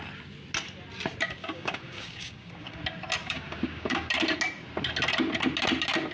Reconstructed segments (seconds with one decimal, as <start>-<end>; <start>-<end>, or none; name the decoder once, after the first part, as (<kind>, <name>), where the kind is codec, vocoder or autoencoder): 1.4-2.8 (codec, DAC); 3.2-4.1